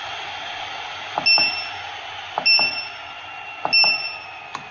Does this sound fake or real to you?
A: real